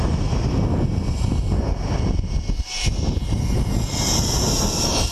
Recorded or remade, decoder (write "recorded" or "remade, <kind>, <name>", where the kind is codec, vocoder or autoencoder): recorded